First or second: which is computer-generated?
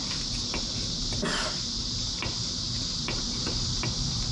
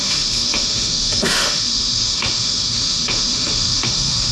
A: second